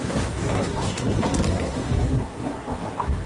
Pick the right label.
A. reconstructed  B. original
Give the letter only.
A